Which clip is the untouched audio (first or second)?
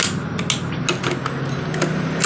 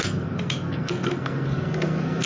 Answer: first